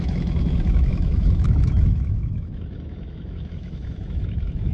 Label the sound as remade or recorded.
remade